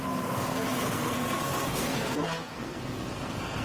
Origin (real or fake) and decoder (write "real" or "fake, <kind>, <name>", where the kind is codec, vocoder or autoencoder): fake, codec, SNAC